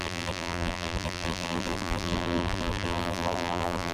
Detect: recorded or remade remade